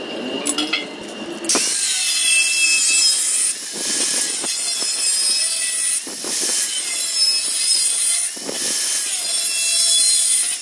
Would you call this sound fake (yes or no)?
no